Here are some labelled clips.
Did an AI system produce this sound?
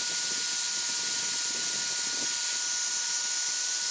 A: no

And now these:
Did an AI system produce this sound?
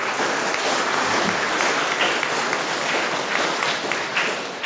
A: no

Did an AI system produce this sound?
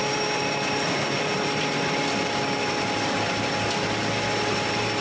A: no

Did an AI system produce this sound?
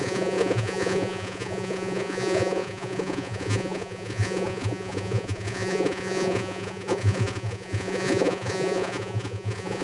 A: yes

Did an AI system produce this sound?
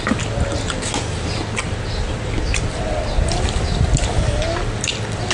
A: no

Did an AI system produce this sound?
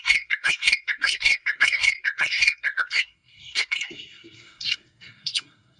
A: yes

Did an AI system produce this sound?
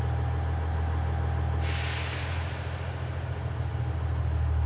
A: no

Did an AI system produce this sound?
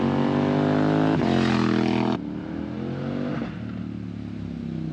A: no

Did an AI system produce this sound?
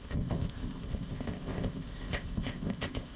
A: yes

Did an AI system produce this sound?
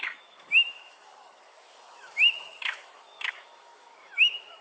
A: yes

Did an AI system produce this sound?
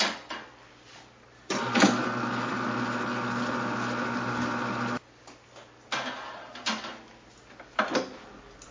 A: no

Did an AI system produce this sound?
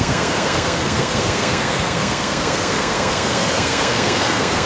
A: yes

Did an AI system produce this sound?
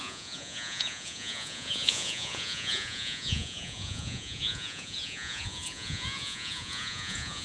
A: yes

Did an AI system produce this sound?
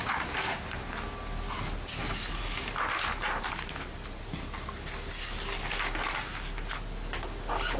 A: no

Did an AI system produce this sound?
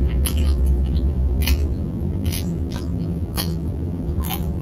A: yes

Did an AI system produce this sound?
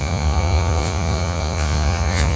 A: yes